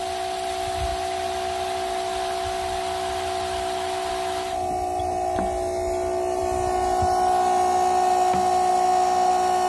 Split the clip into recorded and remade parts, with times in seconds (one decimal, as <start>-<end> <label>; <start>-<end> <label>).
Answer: 0.0-9.7 recorded